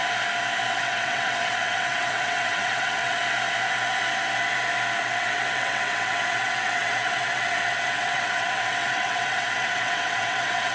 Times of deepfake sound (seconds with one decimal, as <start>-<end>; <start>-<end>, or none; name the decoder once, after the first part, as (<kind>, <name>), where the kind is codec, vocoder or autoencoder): 0.7-3.2 (vocoder, WaveNeXt); 5.0-10.7